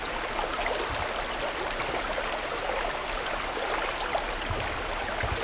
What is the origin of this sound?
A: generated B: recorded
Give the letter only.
B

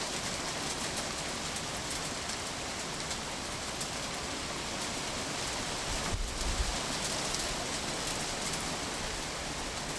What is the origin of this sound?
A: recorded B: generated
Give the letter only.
A